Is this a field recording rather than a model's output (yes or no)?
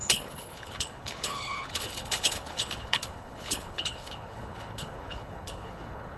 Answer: no